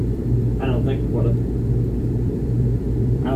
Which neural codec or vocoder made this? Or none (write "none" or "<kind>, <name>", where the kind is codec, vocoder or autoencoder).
vocoder, BigVGAN v2